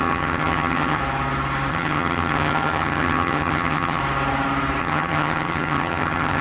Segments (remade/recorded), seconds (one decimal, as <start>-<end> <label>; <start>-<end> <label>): 0.0-1.0 remade; 1.0-1.7 recorded; 1.7-4.0 remade; 4.0-4.8 recorded; 4.8-6.4 remade